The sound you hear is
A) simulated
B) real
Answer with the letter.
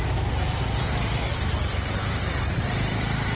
A